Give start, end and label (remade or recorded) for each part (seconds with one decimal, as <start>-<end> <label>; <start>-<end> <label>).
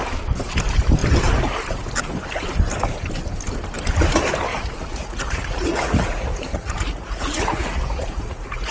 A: 0.0-4.5 recorded; 4.5-8.7 remade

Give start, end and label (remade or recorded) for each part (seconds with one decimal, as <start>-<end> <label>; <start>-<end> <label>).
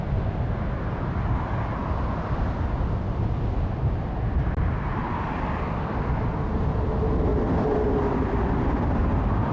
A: 0.0-9.5 recorded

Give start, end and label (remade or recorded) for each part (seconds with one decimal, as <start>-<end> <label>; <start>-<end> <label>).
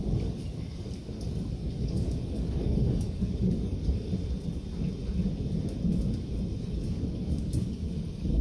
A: 0.0-4.1 remade; 4.1-6.6 recorded; 6.6-8.4 remade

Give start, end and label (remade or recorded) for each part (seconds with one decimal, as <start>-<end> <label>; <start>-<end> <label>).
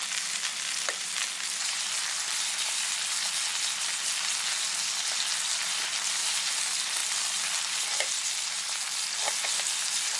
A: 0.0-10.2 recorded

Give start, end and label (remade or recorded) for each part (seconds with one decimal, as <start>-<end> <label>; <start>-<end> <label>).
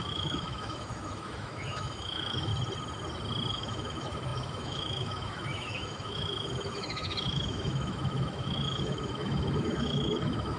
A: 0.0-2.5 remade; 2.5-3.5 recorded; 3.5-10.6 remade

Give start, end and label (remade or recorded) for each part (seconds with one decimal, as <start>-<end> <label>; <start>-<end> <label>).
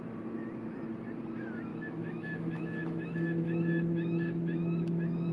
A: 0.0-1.7 recorded; 1.7-5.3 remade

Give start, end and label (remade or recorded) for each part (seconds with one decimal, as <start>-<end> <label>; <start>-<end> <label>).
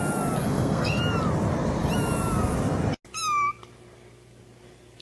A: 0.0-0.4 recorded; 0.4-1.0 remade; 1.0-5.0 recorded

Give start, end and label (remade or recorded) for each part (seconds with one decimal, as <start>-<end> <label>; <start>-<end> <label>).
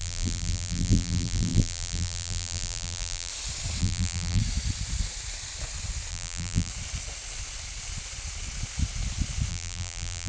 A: 0.0-3.3 remade; 3.3-3.8 recorded; 3.8-4.4 remade; 4.4-6.1 recorded; 6.1-6.7 remade; 6.7-9.5 recorded; 9.5-10.3 remade